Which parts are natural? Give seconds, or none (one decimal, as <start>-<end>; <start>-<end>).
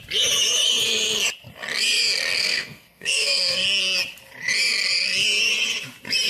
0.0-2.4; 3.8-6.3